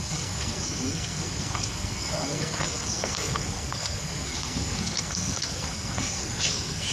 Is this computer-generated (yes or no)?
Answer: yes